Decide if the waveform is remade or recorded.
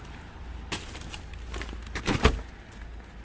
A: recorded